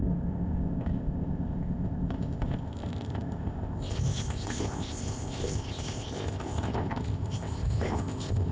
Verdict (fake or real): fake